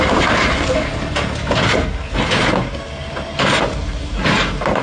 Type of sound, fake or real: real